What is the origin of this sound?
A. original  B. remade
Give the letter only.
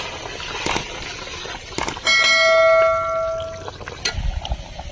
A